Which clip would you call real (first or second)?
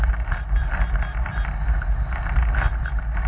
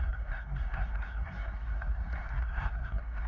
first